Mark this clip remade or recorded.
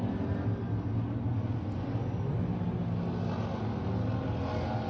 recorded